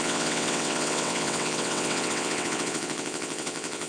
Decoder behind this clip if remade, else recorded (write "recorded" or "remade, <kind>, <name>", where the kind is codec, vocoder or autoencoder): remade, vocoder, WaveNeXt